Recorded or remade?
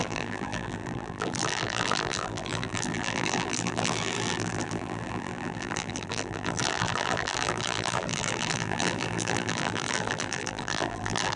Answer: remade